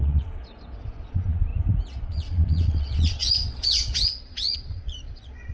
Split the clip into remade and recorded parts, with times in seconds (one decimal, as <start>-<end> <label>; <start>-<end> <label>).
0.0-0.4 remade; 0.4-0.9 recorded; 0.9-1.5 remade; 1.5-2.0 recorded; 2.0-5.5 remade